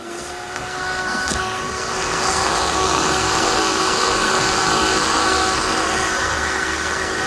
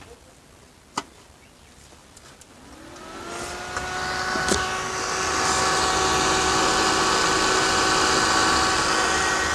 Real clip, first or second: second